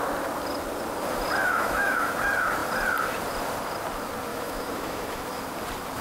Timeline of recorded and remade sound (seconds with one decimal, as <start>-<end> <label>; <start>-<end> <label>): 0.0-1.4 recorded; 1.4-2.1 remade; 2.1-4.3 recorded; 4.3-5.4 remade; 5.4-6.0 recorded